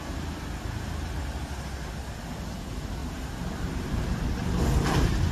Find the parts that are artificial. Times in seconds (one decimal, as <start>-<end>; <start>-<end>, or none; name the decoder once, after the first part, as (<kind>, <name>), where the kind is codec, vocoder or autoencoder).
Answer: 3.0-4.0 (vocoder, BigVGAN v2)